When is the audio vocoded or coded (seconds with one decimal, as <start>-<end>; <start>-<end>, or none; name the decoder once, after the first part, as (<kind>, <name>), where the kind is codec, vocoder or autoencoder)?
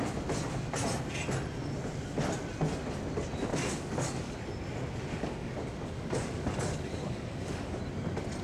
3.5-4.4 (codec, DAC); 5.1-7.8